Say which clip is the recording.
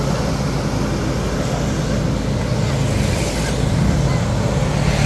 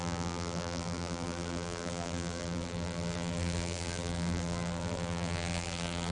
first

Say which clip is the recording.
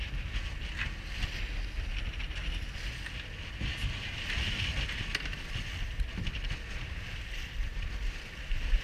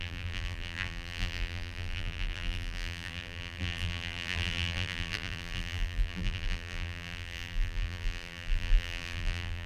first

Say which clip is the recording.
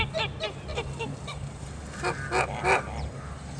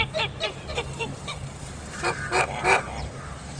first